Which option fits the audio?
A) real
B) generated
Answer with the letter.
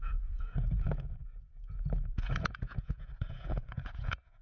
B